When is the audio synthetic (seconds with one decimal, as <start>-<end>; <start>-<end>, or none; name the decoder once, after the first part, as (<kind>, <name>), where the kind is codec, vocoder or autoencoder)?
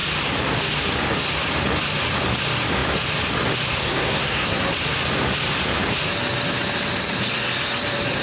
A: 3.8-4.7 (codec, SNAC)